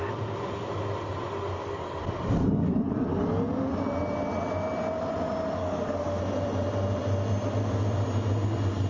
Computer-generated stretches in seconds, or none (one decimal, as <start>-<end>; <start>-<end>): 1.5-2.0; 5.6-6.2